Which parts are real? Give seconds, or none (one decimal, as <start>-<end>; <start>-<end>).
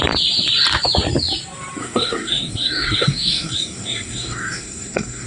0.0-1.8